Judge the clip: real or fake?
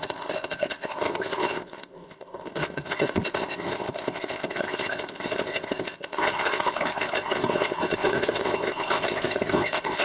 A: fake